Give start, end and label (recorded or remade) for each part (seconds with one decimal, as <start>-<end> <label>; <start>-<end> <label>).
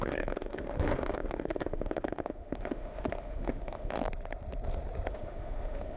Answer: 0.0-4.0 remade; 4.0-5.1 recorded; 5.1-6.0 remade